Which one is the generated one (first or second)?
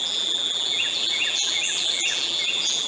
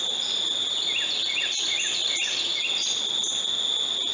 first